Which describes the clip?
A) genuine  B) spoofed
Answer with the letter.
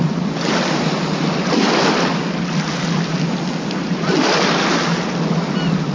A